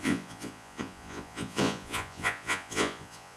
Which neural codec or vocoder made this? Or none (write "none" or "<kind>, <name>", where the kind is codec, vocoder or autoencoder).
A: vocoder, Vocos